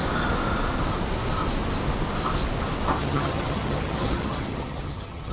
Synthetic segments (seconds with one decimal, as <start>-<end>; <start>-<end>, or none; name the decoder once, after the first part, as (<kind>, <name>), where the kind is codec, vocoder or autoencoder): 3.0-5.3 (vocoder, HiFi-GAN)